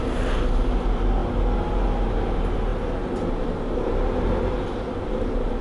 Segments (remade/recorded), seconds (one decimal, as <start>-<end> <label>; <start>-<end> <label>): 0.0-5.6 recorded